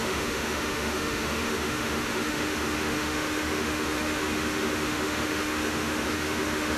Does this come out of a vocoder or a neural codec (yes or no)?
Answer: yes